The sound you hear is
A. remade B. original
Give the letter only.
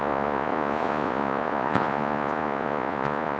A